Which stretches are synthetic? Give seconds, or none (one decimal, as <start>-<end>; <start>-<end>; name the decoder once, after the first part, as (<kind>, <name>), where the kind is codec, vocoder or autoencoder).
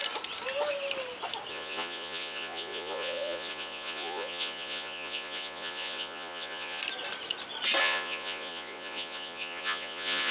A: 1.5-6.8 (vocoder, Vocos); 7.8-10.3